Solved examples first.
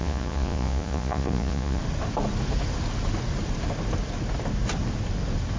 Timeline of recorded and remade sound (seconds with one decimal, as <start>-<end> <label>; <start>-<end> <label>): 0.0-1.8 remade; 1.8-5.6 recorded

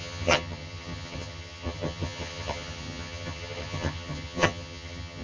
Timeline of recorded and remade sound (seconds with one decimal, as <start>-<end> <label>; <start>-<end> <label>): 0.0-5.2 remade

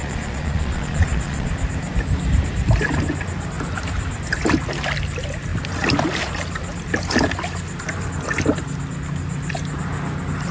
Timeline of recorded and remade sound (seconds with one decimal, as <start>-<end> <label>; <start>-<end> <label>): 0.0-1.5 remade; 1.5-10.5 recorded

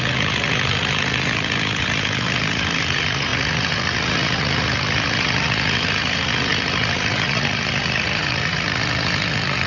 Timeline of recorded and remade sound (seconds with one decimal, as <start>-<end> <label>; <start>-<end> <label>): 0.0-9.7 remade

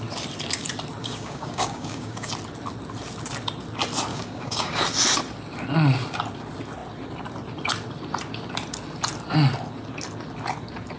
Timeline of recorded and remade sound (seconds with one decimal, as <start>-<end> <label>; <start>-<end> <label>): 0.0-1.0 recorded; 1.0-2.3 remade; 2.3-4.1 recorded; 4.1-4.8 remade; 4.8-11.0 recorded

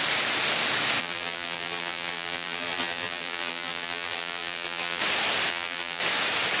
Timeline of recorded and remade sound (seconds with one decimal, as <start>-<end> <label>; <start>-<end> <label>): 0.0-1.0 recorded; 1.0-5.0 remade; 5.0-5.5 recorded; 5.5-6.0 remade; 6.0-6.6 recorded